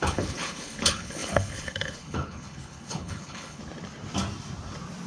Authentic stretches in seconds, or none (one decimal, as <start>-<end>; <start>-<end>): 3.6-5.1